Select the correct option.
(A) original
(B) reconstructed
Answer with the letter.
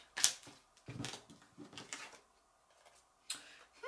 A